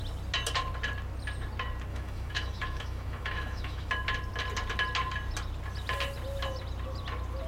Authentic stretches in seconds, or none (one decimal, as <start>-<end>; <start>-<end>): 0.0-1.9; 3.9-7.5

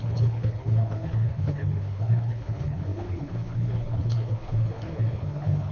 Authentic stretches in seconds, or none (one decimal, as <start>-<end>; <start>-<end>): none

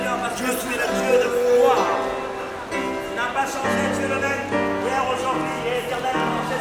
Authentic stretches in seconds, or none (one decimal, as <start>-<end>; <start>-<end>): 0.0-6.6

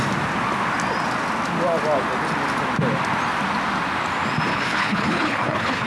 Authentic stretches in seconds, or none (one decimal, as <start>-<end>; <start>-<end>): 0.0-4.5